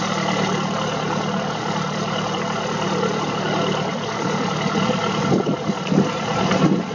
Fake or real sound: real